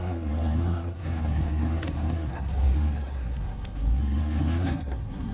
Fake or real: fake